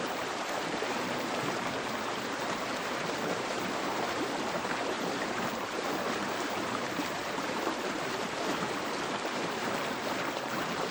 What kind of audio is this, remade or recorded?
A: remade